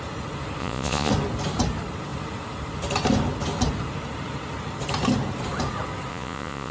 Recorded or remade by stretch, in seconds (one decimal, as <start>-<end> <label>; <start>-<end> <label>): 0.0-0.6 recorded; 0.6-1.1 remade; 1.1-6.1 recorded; 6.1-6.7 remade